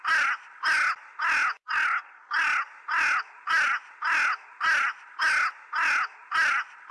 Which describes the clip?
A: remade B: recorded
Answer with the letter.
B